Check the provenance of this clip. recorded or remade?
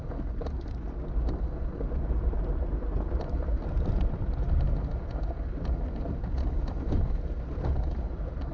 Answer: recorded